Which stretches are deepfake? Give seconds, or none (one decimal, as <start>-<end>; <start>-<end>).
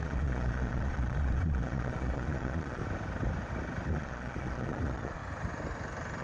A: 0.0-2.8; 3.9-5.2